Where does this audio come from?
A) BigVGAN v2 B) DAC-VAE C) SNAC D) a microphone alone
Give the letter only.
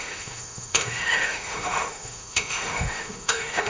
B